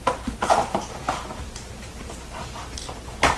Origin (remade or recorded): remade